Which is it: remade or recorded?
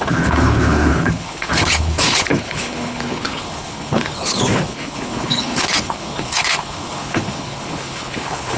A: remade